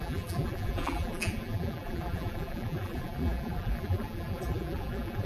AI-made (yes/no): yes